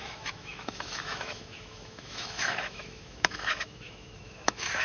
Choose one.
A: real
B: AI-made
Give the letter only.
B